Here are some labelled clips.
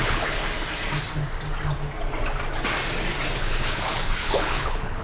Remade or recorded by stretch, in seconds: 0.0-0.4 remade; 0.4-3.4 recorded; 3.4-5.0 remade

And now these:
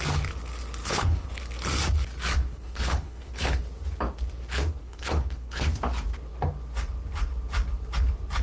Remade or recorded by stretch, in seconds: 0.0-0.8 recorded; 0.8-1.4 remade; 1.4-2.4 recorded; 2.4-3.6 remade; 3.6-4.8 recorded; 4.8-5.8 remade; 5.8-8.4 recorded